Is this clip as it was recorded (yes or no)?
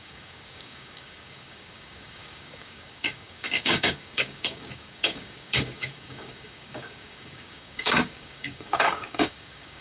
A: no